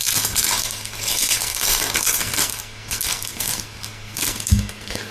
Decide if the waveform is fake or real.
fake